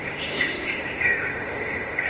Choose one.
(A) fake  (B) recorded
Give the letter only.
A